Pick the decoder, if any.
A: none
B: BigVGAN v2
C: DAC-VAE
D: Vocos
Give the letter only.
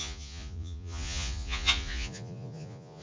D